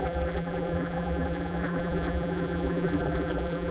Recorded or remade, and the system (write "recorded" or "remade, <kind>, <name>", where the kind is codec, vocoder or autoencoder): remade, vocoder, BigVGAN v2